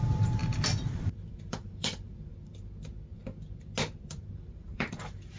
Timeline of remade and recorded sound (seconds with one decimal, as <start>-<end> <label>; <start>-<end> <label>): 0.0-0.4 remade; 0.4-1.0 recorded; 1.0-2.3 remade; 2.3-4.0 recorded; 4.0-5.4 remade